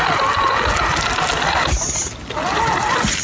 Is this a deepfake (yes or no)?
no